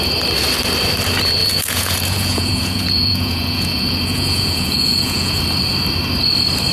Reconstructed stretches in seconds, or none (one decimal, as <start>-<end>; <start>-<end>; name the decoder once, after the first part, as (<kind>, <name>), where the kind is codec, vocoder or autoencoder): 1.4-5.4 (vocoder, Vocos)